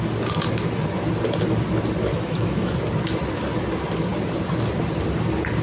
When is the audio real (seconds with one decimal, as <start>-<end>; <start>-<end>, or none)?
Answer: 0.0-2.1; 2.7-5.6